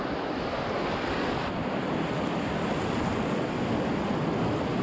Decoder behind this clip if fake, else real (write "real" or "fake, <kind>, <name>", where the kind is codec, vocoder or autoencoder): real